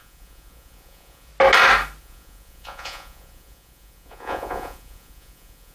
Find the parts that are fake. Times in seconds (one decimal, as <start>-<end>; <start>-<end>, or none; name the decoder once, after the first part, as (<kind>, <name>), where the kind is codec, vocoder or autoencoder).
0.0-1.3 (vocoder, Vocos); 2.0-5.7